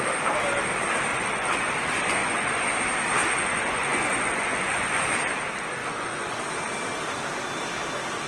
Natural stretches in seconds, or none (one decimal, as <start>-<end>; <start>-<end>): 0.0-1.1; 1.7-2.2; 2.7-3.2; 5.0-5.8; 6.4-8.3